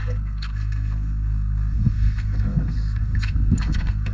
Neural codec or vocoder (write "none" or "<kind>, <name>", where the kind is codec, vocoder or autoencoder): codec, SNAC